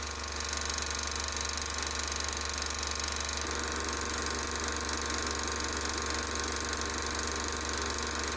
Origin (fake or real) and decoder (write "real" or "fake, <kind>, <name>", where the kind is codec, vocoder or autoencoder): real